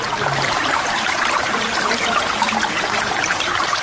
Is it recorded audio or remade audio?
remade